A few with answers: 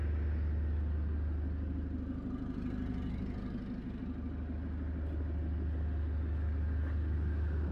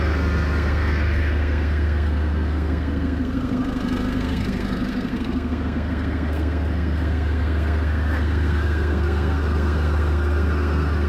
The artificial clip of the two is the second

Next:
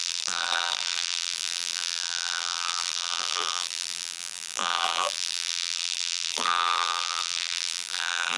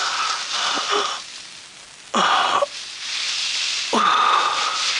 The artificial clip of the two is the first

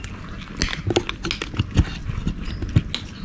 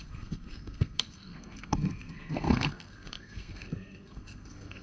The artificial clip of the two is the second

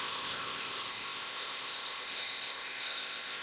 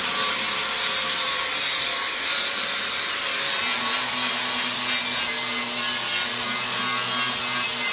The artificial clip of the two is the first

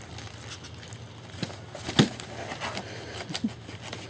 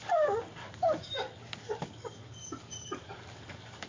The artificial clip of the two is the second